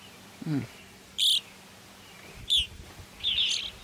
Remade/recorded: recorded